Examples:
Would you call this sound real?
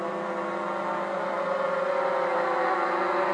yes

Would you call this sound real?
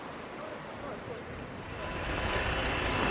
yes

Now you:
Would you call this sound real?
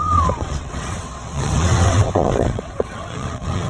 no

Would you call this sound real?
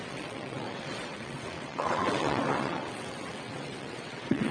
no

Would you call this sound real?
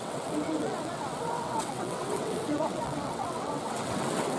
no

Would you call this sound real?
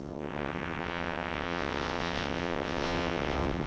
no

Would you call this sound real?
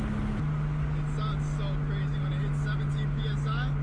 yes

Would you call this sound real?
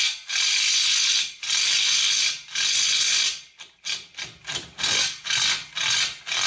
yes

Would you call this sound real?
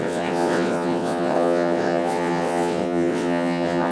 no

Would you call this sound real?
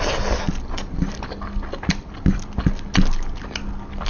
yes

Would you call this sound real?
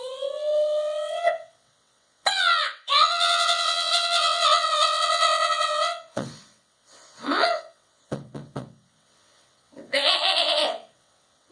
no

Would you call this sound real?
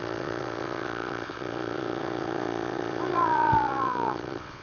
no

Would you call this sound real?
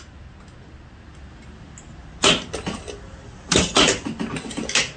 yes